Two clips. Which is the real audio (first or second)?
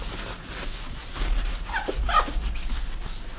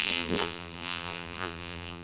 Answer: first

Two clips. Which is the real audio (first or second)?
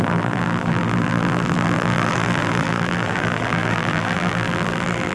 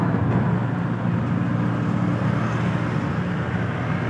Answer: second